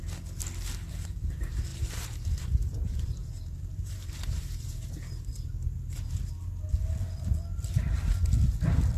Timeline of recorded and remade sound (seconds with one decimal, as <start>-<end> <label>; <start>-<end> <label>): 0.0-1.7 recorded; 1.7-6.3 remade; 6.3-9.0 recorded